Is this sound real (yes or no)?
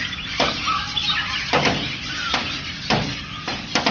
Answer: no